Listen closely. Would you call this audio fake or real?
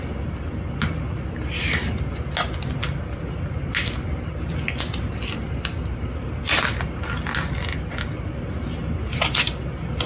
real